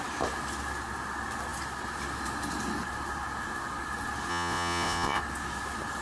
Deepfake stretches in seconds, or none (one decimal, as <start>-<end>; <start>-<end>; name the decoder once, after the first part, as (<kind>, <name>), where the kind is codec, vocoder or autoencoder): 4.3-5.2 (vocoder, Vocos)